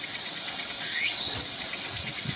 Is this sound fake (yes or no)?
yes